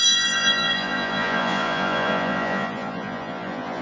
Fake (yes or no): yes